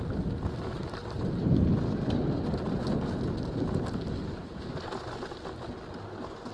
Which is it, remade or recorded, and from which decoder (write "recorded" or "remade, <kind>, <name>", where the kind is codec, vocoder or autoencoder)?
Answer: recorded